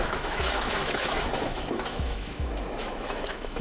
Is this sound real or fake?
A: fake